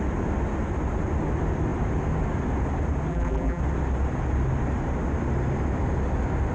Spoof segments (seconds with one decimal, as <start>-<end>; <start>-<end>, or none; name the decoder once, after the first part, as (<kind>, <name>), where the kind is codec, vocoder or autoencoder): 3.1-3.6 (vocoder, BigVGAN v2)

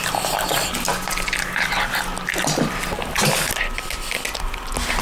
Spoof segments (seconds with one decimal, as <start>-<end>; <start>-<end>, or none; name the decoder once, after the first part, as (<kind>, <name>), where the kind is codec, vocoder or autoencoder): none